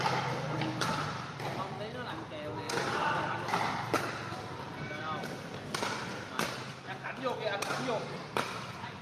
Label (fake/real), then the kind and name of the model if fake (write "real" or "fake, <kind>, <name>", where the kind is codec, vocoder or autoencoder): real